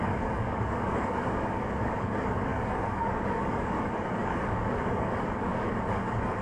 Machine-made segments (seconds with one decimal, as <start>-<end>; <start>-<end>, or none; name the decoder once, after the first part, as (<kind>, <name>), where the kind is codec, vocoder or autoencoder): 0.0-6.4 (codec, DAC)